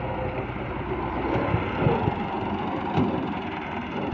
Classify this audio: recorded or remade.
recorded